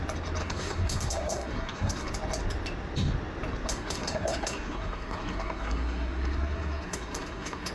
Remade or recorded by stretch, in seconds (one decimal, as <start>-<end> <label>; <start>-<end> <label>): 0.0-0.4 recorded; 0.4-2.1 remade; 2.1-3.7 recorded; 3.7-7.7 remade